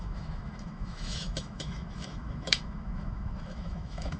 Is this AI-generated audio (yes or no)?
yes